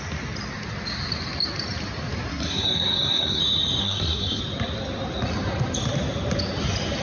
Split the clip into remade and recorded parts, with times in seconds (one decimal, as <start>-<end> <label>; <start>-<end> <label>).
0.0-2.3 recorded; 2.3-3.4 remade; 3.4-3.8 recorded; 3.8-4.4 remade; 4.4-7.0 recorded